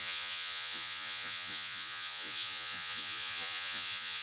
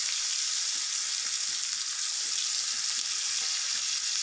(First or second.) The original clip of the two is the second